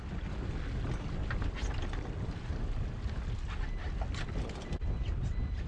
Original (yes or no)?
yes